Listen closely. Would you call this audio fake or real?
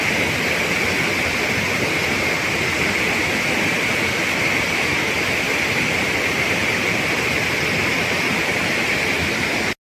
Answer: real